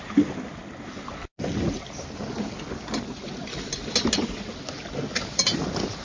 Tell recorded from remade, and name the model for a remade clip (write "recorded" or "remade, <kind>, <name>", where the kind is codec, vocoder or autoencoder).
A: recorded